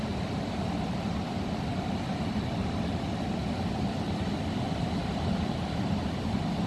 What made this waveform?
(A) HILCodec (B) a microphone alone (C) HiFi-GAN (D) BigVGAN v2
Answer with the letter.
B